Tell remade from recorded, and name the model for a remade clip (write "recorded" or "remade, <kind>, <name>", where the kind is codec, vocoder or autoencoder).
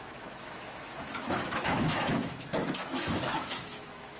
remade, autoencoder, DAC-VAE